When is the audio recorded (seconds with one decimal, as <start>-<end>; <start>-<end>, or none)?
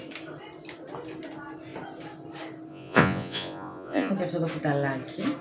0.0-2.7; 4.1-5.4